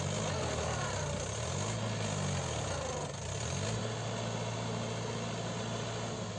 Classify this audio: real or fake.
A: real